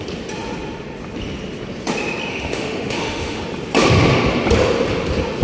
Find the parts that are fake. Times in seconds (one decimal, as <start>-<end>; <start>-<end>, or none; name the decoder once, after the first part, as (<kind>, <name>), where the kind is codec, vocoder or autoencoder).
2.3-3.4 (autoencoder, DAC-VAE)